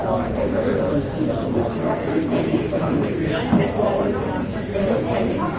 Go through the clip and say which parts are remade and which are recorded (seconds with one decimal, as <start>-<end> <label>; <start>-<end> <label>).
0.0-3.4 remade; 3.4-5.6 recorded